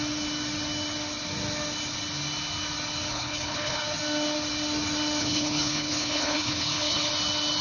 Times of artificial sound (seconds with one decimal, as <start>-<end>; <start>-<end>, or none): 3.1-3.8; 5.2-7.1